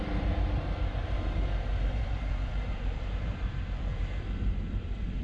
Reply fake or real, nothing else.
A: fake